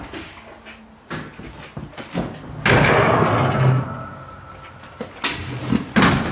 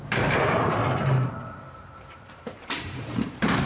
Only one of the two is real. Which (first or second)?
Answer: first